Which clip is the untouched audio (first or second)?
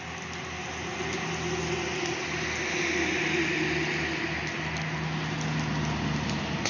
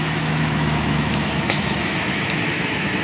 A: first